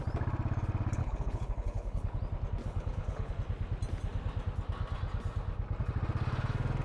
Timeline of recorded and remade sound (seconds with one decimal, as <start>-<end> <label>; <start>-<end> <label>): 0.0-1.0 recorded; 1.0-2.2 remade; 2.2-2.6 recorded; 2.6-3.3 remade; 3.3-6.8 recorded